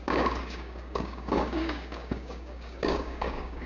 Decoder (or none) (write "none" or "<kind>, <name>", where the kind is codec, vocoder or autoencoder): codec, DAC